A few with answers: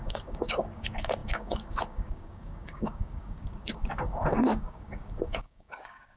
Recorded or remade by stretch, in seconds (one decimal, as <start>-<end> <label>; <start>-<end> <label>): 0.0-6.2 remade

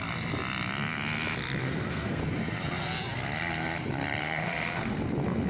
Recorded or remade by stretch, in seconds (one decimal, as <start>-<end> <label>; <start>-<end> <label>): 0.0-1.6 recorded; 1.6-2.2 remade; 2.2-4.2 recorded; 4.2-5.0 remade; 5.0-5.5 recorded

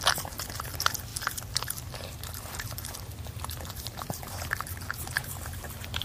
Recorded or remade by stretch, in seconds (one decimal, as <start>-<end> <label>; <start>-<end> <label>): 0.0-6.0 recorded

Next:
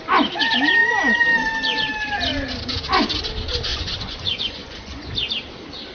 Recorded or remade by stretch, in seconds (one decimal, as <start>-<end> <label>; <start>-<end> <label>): 0.0-3.7 recorded; 3.7-5.1 remade; 5.1-5.9 recorded

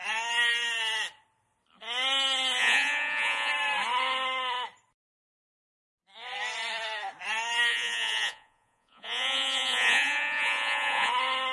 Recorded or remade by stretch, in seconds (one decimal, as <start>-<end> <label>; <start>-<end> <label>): 0.0-2.6 recorded; 2.6-3.5 remade; 3.5-7.7 recorded; 7.7-11.1 remade; 11.1-11.5 recorded

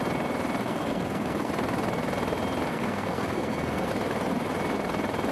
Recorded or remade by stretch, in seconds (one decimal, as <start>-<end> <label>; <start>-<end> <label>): 0.0-0.6 recorded; 0.6-1.5 remade; 1.5-2.7 recorded; 2.7-3.9 remade; 3.9-5.3 recorded